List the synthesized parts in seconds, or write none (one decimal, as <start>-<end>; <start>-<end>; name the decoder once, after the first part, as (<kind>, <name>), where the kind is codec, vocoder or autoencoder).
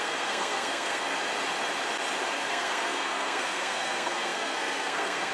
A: 0.0-1.2 (codec, SNAC); 2.5-5.3